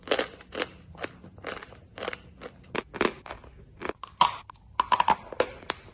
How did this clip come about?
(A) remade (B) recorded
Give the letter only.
B